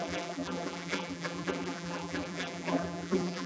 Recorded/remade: remade